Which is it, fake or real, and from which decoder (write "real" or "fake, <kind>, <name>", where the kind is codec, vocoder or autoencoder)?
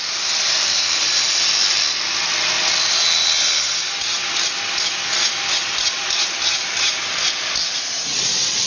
real